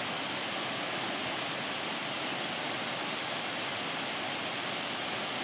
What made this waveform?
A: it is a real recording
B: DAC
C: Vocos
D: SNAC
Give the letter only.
A